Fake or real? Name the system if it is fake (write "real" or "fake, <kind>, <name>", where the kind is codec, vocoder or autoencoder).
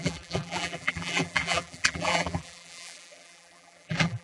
fake, vocoder, BigVGAN v2